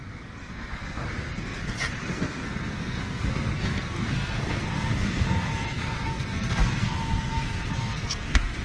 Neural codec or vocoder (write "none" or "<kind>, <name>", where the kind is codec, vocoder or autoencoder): codec, SNAC